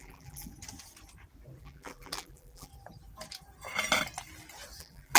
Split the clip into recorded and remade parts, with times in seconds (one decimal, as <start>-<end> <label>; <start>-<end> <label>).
0.0-0.5 remade; 0.5-1.6 recorded; 1.6-2.7 remade; 2.7-4.8 recorded; 4.8-5.2 remade